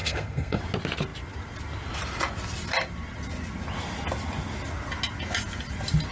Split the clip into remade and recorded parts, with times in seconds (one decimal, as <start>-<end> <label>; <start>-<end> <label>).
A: 0.0-0.6 remade; 0.6-6.1 recorded